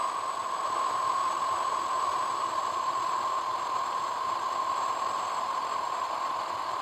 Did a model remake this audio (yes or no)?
no